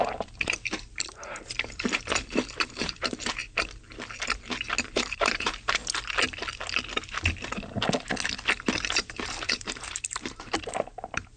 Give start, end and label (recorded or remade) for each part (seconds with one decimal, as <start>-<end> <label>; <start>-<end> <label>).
0.0-3.4 remade; 3.4-4.8 recorded; 4.8-5.8 remade; 5.8-8.9 recorded; 8.9-11.4 remade